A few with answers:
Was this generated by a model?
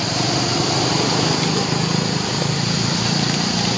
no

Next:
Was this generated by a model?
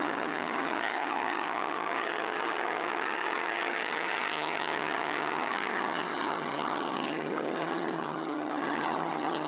yes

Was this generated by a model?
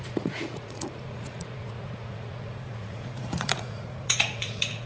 yes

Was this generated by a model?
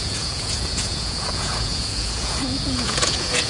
yes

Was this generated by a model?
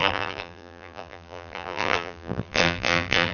yes